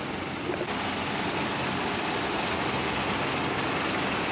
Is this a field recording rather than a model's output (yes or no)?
yes